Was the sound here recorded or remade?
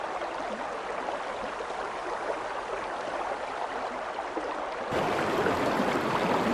recorded